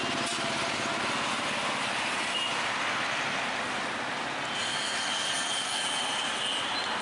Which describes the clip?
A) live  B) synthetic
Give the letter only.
A